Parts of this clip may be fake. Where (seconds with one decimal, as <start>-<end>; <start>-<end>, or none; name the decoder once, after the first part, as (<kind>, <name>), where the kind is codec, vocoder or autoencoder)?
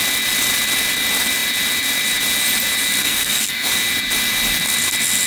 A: 3.0-3.7 (codec, SNAC)